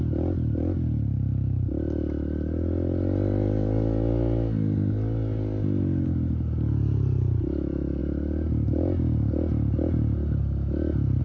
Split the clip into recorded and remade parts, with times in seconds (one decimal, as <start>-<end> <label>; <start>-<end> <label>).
0.0-11.2 recorded